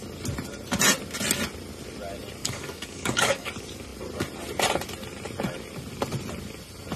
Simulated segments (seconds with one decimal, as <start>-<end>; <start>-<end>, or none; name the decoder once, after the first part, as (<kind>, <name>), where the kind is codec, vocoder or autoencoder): 2.4-3.5 (codec, DAC)

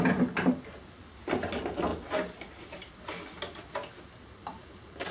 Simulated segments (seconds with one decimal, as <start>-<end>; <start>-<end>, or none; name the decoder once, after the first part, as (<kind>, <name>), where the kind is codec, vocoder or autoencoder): none

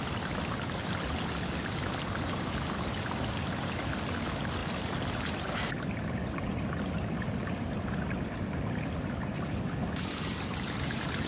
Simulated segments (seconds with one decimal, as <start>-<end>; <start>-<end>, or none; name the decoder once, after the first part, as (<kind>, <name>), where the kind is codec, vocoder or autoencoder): none

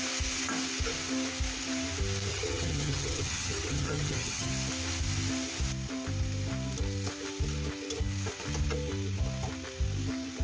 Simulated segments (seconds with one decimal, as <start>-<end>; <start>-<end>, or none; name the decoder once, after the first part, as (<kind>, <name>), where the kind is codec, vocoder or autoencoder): 2.3-4.5 (vocoder, HiFi-GAN)

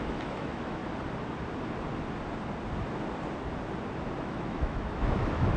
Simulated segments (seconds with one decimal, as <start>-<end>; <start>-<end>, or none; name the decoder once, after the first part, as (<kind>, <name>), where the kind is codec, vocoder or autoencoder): 0.0-0.8 (autoencoder, DAC-VAE); 4.2-5.6

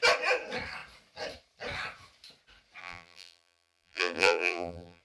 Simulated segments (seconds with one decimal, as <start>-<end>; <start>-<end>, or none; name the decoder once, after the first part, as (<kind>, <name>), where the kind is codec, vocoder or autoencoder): 2.8-5.0 (vocoder, BigVGAN v2)